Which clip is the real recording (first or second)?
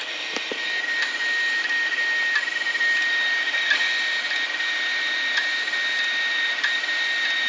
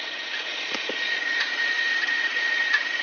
first